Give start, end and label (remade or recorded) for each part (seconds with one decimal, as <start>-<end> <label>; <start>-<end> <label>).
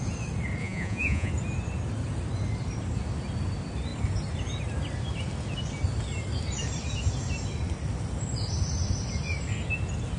0.0-0.6 recorded; 0.6-1.3 remade; 1.3-10.2 recorded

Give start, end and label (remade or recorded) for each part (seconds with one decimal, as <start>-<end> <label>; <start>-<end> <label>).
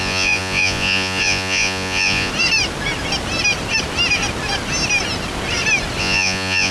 0.0-2.3 remade; 2.3-6.0 recorded; 6.0-6.7 remade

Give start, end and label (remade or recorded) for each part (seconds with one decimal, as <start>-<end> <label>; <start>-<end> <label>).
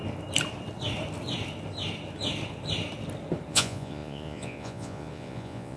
0.0-3.5 recorded; 3.5-5.8 remade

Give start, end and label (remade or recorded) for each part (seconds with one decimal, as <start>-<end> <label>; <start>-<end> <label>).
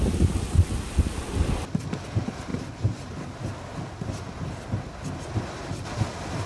0.0-6.5 recorded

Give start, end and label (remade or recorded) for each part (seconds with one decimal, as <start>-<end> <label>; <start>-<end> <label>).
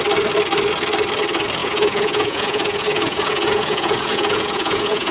0.0-1.6 recorded; 1.6-5.1 remade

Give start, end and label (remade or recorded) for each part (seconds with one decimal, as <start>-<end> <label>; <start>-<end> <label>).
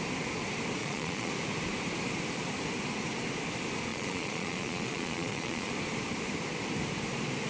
0.0-0.8 recorded; 0.8-1.3 remade; 1.3-3.9 recorded; 3.9-5.7 remade; 5.7-7.5 recorded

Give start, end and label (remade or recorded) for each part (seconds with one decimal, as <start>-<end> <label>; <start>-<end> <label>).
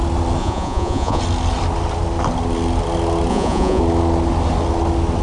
0.0-0.4 recorded; 0.4-1.2 remade; 1.2-3.3 recorded; 3.3-3.8 remade; 3.8-5.2 recorded